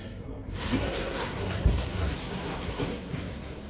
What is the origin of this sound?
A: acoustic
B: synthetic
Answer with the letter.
B